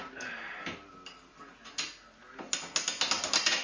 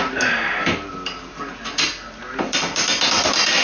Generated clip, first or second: second